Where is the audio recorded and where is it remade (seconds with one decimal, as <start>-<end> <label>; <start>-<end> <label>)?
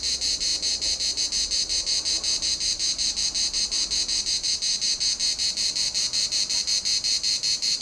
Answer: 0.0-7.8 recorded